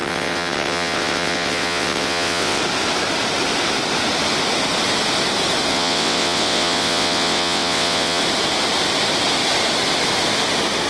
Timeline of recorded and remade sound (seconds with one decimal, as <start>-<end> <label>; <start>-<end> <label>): 0.0-2.6 remade; 2.6-5.7 recorded; 5.7-8.2 remade; 8.2-10.9 recorded